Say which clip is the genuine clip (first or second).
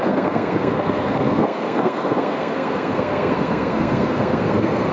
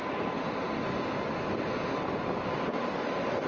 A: second